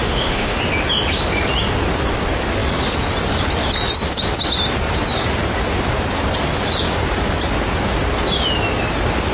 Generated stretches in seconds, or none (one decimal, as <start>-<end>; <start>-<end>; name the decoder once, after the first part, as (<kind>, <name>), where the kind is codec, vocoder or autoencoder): 0.0-0.6 (autoencoder, DAC-VAE)